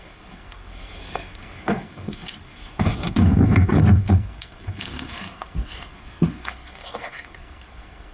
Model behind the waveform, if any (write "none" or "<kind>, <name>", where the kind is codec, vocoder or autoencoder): codec, SNAC